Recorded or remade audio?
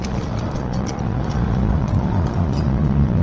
remade